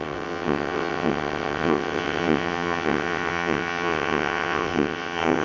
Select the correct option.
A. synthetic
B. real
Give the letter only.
A